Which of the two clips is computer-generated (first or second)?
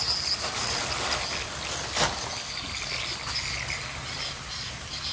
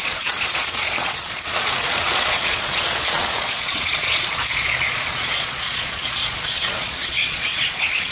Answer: second